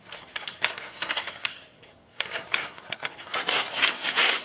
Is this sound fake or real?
fake